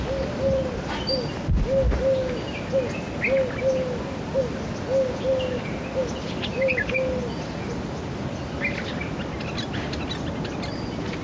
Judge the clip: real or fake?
real